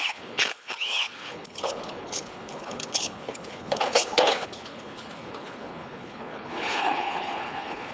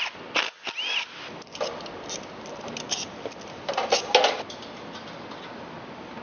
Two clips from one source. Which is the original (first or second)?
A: second